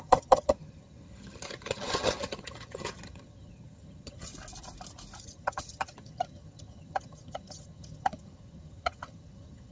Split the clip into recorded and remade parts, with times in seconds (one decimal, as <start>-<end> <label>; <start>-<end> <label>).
0.0-4.3 remade; 4.3-5.2 recorded; 5.2-9.7 remade